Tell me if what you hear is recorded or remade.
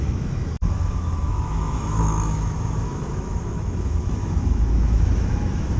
remade